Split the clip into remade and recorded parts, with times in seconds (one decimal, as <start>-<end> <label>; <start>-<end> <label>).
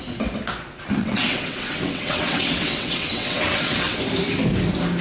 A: 0.0-1.0 recorded; 1.0-4.0 remade; 4.0-5.0 recorded